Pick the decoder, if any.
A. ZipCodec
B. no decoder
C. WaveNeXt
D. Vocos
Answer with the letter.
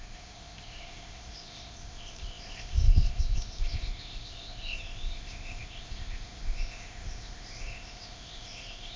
A